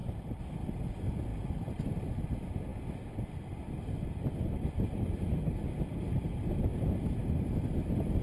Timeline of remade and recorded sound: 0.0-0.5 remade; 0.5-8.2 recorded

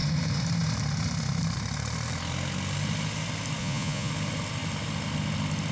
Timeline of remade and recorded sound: 0.0-3.6 recorded; 3.6-4.1 remade; 4.1-5.7 recorded